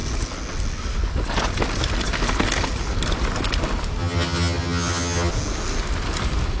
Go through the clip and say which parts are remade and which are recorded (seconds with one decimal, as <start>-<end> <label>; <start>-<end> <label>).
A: 0.0-4.0 recorded; 4.0-5.3 remade; 5.3-6.6 recorded

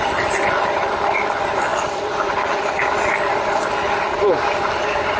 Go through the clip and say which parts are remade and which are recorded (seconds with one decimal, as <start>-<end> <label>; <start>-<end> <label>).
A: 0.0-5.2 recorded

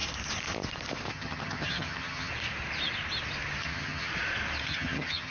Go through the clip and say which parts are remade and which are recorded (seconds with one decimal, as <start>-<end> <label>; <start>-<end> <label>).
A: 0.0-1.1 recorded; 1.1-2.3 remade; 2.3-3.6 recorded; 3.6-4.1 remade; 4.1-4.6 recorded; 4.6-5.3 remade

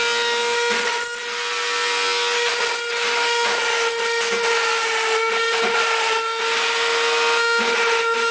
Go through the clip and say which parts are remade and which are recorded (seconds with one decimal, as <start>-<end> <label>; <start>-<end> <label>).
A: 0.0-8.3 recorded